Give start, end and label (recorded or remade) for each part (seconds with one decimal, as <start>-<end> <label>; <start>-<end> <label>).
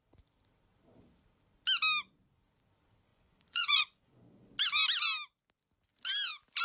0.0-3.1 recorded; 3.1-4.3 remade; 4.3-6.6 recorded